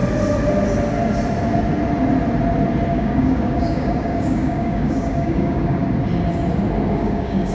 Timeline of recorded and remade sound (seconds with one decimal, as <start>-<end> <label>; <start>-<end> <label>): 0.0-2.9 recorded; 2.9-5.8 remade; 5.8-6.9 recorded; 6.9-7.5 remade